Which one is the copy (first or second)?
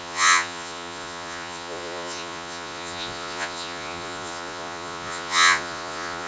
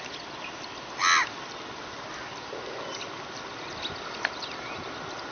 first